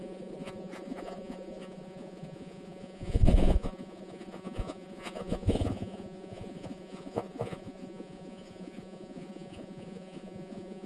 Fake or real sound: fake